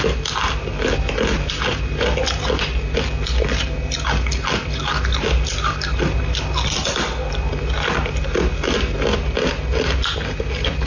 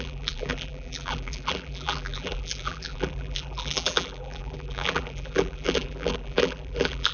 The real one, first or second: first